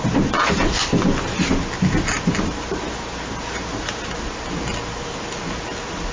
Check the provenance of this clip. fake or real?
real